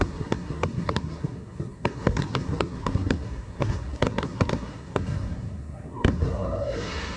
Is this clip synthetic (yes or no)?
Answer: yes